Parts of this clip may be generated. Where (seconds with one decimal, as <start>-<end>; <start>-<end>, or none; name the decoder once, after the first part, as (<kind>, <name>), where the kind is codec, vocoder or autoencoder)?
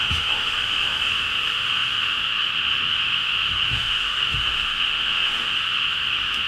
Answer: 0.0-6.5 (autoencoder, DAC-VAE)